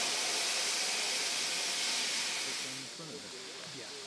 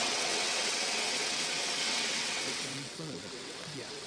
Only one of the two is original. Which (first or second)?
first